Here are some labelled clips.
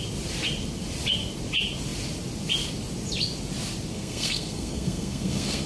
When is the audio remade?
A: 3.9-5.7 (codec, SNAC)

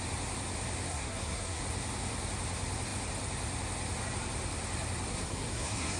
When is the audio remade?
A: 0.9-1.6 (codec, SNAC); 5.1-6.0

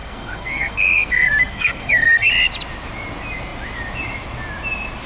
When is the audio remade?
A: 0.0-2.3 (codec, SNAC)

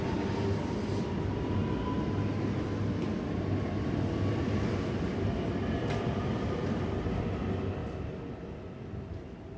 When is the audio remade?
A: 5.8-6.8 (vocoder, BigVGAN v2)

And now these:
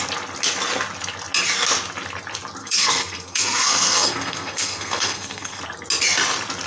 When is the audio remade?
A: 2.6-5.6 (codec, SNAC)